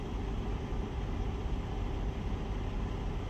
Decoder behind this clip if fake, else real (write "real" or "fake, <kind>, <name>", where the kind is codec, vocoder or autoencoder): real